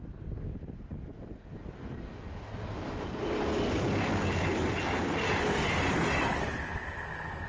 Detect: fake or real real